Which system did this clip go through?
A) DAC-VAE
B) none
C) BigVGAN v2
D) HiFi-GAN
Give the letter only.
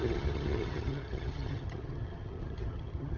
D